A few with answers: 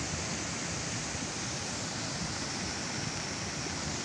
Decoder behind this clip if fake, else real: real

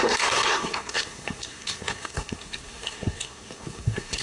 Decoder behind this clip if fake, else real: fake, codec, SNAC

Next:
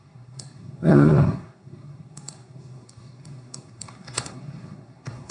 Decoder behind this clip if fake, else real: fake, codec, SNAC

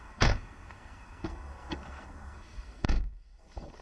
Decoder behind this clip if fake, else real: fake, codec, SNAC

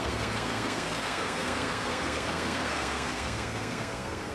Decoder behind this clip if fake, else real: fake, codec, SNAC